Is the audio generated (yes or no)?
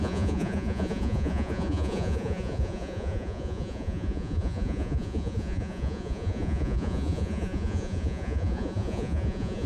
yes